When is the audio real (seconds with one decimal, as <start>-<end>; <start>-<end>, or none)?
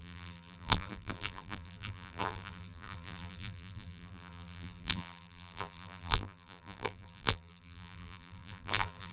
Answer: none